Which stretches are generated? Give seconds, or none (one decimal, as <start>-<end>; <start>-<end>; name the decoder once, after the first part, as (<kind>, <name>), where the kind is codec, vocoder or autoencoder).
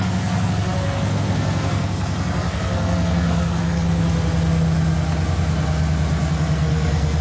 0.0-4.0 (codec, SNAC); 6.3-7.2